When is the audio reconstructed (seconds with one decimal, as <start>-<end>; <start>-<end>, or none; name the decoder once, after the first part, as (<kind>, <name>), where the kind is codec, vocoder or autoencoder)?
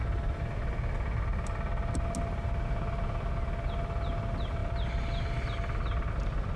none